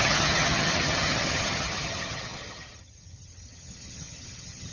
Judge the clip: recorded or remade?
remade